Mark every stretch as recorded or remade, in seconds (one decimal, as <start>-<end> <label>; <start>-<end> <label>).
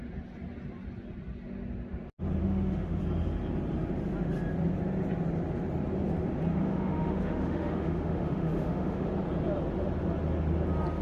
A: 0.0-2.4 recorded; 2.4-3.0 remade; 3.0-6.5 recorded; 6.5-9.1 remade; 9.1-11.0 recorded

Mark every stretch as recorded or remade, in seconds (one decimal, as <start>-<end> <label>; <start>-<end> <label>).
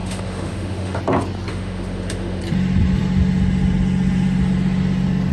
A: 0.0-1.0 remade; 1.0-1.5 recorded; 1.5-2.4 remade; 2.4-5.3 recorded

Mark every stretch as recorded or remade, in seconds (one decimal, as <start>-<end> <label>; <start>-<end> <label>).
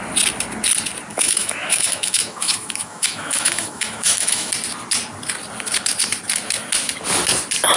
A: 0.0-1.1 recorded; 1.1-4.5 remade; 4.5-7.8 recorded